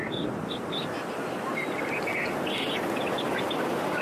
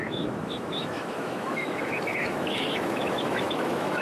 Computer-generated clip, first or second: second